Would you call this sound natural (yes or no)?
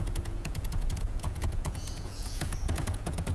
no